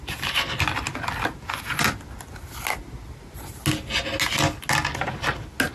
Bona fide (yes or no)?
yes